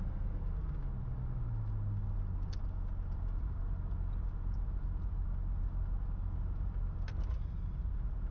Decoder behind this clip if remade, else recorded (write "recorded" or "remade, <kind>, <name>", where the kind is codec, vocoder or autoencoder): recorded